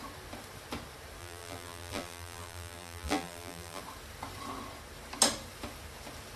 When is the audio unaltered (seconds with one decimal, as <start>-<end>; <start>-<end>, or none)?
0.0-1.2; 3.8-6.4